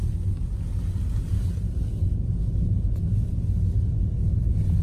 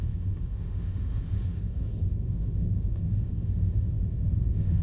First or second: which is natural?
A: first